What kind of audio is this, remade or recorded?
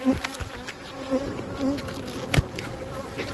recorded